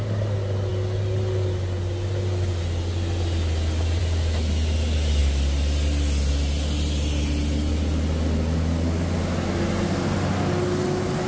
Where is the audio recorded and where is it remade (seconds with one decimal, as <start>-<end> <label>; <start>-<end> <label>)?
0.0-11.3 recorded

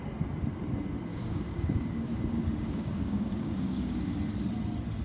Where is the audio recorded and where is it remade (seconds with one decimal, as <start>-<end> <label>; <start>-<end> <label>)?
0.0-1.1 recorded; 1.1-4.1 remade; 4.1-5.0 recorded

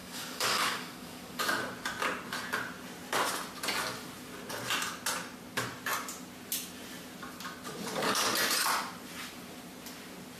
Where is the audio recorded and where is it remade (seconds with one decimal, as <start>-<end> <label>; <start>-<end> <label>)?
0.0-1.4 remade; 1.4-10.4 recorded